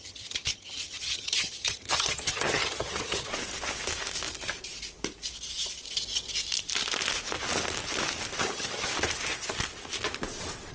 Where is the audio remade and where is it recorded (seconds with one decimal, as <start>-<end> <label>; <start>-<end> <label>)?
0.0-3.3 remade; 3.3-8.4 recorded; 8.4-8.9 remade; 8.9-10.7 recorded